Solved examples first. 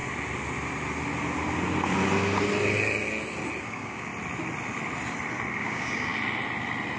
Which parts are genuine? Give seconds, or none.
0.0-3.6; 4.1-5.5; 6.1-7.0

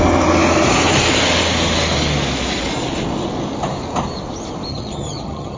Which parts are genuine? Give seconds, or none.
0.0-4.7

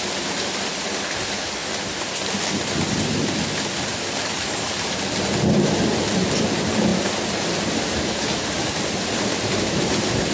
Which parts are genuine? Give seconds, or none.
0.0-10.3

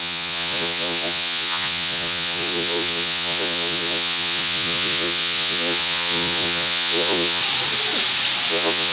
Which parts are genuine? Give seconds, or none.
7.4-8.5

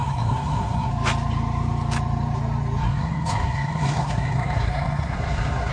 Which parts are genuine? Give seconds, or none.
0.9-2.8

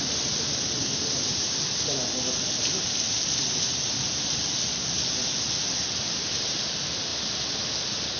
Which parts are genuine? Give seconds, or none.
1.3-2.6; 7.1-8.2

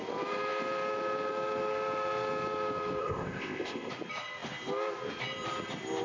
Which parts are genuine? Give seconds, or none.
0.0-3.0; 3.9-6.0

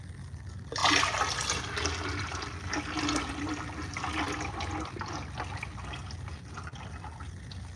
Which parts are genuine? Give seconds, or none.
0.0-7.8